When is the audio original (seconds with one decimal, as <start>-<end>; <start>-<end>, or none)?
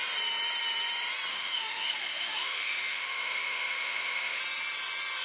0.0-1.3; 4.4-5.2